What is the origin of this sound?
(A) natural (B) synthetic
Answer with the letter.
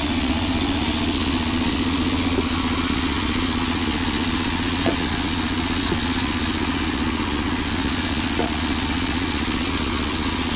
B